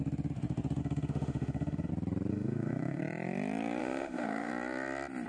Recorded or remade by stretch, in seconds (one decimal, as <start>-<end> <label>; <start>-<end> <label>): 0.0-0.8 recorded; 0.8-1.9 remade; 1.9-2.3 recorded; 2.3-3.0 remade; 3.0-3.8 recorded; 3.8-4.5 remade; 4.5-5.3 recorded